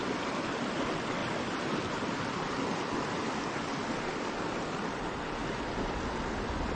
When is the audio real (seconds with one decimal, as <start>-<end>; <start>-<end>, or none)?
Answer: 0.0-1.2; 3.4-5.4; 6.1-6.7